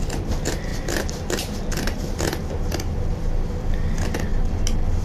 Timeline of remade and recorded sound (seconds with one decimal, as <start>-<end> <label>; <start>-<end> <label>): 0.0-5.0 recorded